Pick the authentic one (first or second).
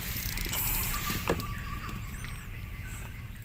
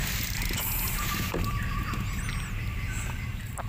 second